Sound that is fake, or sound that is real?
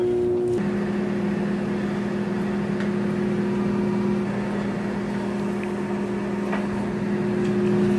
real